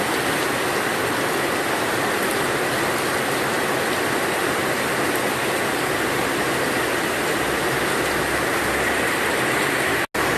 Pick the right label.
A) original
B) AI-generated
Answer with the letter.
A